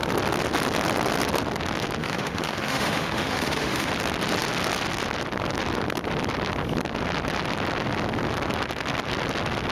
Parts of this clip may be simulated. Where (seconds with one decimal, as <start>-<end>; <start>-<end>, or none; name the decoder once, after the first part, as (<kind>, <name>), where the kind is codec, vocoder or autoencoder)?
2.0-3.9 (autoencoder, DAC-VAE)